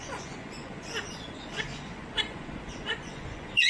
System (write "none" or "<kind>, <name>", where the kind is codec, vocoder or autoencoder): vocoder, Vocos